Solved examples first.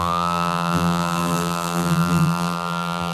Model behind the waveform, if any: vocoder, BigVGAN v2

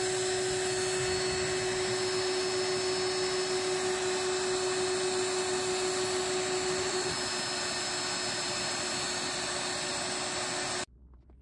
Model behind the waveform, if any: none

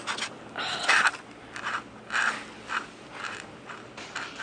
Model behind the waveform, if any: none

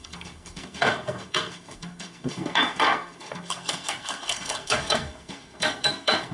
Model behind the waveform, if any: codec, SNAC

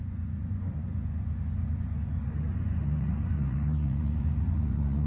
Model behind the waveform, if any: vocoder, Vocos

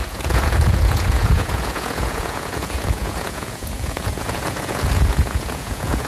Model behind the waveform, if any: vocoder, Vocos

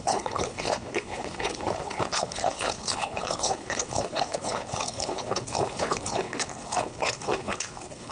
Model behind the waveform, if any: codec, HILCodec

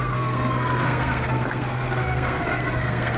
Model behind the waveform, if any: codec, SNAC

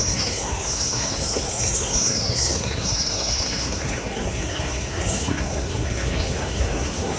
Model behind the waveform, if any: codec, SNAC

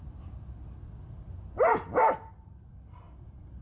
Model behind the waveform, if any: none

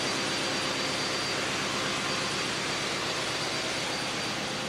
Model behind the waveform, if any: none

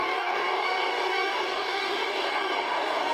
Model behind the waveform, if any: codec, DAC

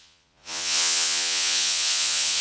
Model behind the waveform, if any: vocoder, Vocos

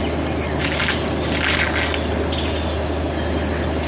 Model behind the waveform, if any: none